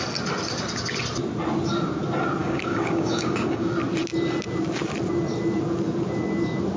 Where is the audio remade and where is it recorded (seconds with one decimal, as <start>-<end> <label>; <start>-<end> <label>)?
0.0-2.4 recorded; 2.4-3.7 remade; 3.7-6.8 recorded